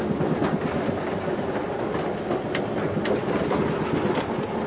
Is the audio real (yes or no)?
yes